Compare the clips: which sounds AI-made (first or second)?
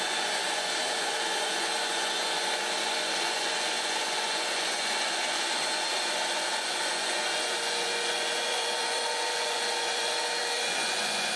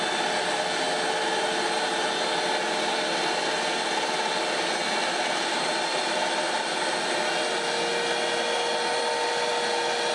first